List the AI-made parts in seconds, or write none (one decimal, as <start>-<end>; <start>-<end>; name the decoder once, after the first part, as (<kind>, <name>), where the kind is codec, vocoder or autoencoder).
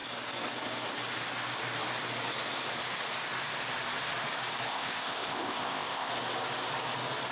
4.7-6.1 (codec, ZipCodec)